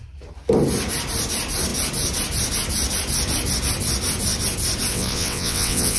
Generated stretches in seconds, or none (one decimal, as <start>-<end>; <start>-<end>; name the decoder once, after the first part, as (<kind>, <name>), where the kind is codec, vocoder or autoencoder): 4.9-6.0 (vocoder, WaveNeXt)